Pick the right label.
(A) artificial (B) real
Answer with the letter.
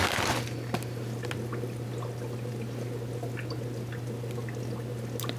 B